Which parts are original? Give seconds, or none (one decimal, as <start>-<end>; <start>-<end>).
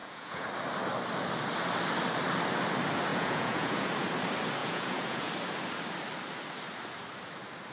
0.5-3.1; 3.9-4.6; 5.3-7.7